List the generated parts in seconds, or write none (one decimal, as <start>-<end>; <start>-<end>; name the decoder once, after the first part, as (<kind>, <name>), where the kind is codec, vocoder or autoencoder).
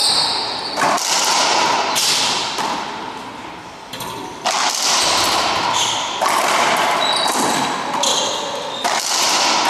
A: none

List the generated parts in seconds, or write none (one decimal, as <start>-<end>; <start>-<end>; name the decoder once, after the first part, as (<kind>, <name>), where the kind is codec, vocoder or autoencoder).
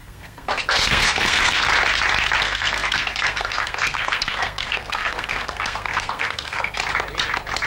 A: 0.0-1.7 (codec, SNAC); 2.4-6.8